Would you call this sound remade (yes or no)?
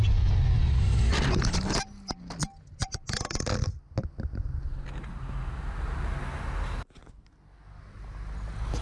no